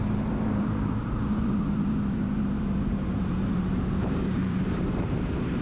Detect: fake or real fake